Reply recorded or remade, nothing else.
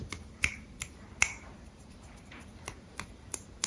remade